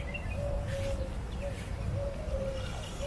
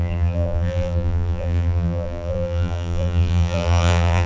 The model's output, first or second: second